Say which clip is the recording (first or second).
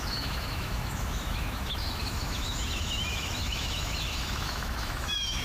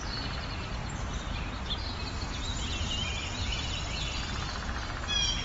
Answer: second